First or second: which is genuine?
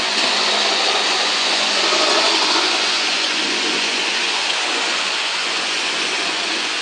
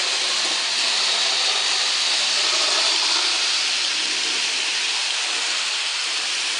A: second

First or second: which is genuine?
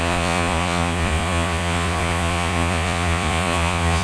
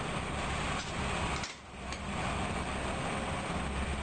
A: second